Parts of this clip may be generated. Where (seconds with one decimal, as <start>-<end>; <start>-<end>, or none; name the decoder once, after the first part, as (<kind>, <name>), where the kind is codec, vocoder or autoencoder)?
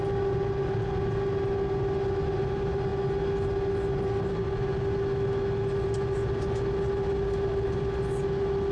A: none